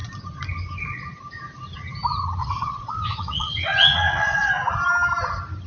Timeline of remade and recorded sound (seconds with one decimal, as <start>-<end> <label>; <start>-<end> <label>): 0.0-2.4 recorded; 2.4-4.5 remade; 4.5-5.7 recorded

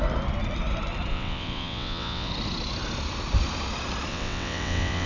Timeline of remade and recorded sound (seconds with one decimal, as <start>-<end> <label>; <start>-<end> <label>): 0.0-1.1 recorded; 1.1-2.3 remade; 2.3-4.1 recorded; 4.1-5.1 remade

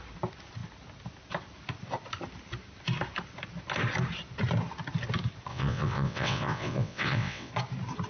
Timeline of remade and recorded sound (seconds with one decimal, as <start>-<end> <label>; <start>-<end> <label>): 0.0-5.5 recorded; 5.5-7.5 remade; 7.5-8.1 recorded

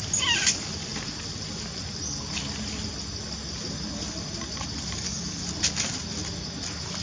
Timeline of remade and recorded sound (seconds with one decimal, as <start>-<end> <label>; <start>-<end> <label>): 0.0-7.0 recorded

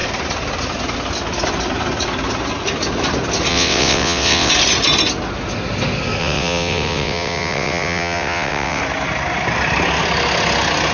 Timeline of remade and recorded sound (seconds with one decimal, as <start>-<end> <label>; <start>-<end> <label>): 0.0-3.5 recorded; 3.5-4.5 remade; 4.5-6.2 recorded; 6.2-8.8 remade; 8.8-10.9 recorded

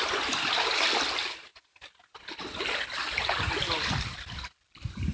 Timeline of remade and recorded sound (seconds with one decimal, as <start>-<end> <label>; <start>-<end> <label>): 0.0-5.1 recorded

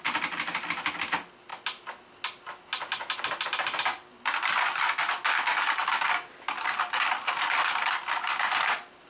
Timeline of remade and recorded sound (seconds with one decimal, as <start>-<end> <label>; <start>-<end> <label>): 0.0-9.1 recorded

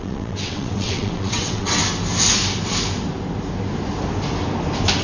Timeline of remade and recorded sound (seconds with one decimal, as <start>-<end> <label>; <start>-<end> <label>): 0.0-1.8 remade; 1.8-5.0 recorded